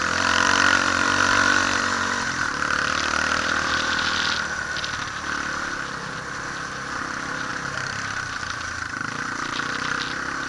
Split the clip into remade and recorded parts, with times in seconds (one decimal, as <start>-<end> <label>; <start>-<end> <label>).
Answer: 0.0-10.5 recorded